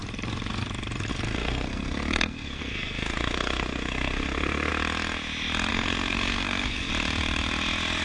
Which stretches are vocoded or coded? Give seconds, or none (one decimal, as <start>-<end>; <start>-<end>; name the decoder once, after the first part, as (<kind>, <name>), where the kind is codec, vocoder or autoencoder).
1.1-4.7 (codec, SNAC); 5.7-6.9